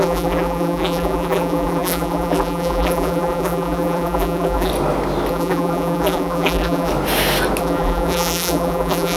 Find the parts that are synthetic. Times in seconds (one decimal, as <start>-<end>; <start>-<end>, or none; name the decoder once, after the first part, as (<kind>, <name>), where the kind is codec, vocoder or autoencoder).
0.0-4.7 (vocoder, BigVGAN v2); 5.3-6.9; 7.6-9.2

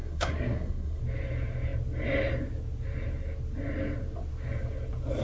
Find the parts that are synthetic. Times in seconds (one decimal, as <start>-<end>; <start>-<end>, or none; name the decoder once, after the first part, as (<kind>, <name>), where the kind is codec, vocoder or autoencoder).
0.0-1.0 (codec, SNAC)

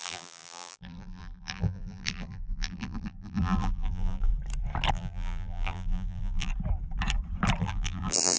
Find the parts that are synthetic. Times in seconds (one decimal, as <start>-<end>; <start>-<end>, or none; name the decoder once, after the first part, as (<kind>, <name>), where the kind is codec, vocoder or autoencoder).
0.0-4.3 (vocoder, BigVGAN v2); 4.9-6.5; 7.6-8.4

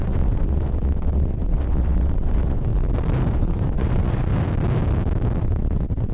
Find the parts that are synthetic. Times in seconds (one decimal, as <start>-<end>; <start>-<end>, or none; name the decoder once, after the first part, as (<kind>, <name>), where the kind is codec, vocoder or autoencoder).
0.0-2.7 (vocoder, WaveNeXt); 3.3-4.3; 5.4-6.1

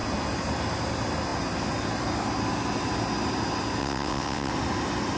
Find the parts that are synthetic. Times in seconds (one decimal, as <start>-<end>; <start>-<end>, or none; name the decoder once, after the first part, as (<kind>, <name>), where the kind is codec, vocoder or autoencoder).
3.8-4.5 (vocoder, WaveNeXt)

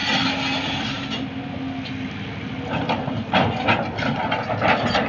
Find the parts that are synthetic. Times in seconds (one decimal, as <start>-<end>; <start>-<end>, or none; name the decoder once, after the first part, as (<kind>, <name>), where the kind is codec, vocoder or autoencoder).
none

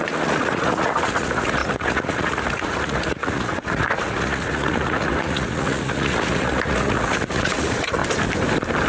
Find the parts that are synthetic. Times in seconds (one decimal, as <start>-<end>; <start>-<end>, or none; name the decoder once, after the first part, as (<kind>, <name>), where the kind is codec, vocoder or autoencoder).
0.0-8.0 (vocoder, Vocos)